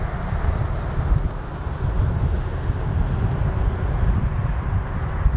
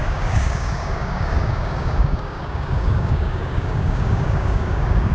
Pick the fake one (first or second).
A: second